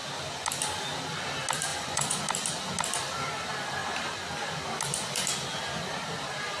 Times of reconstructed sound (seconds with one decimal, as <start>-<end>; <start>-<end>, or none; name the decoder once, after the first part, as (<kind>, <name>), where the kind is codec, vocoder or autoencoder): 1.7-2.2 (vocoder, Vocos)